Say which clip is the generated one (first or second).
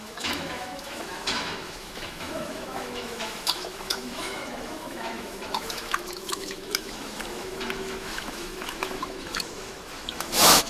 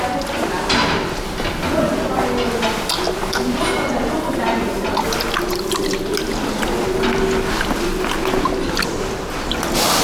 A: first